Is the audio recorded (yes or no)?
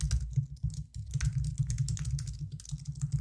yes